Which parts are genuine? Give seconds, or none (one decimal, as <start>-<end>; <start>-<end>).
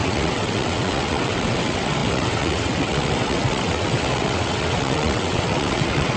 none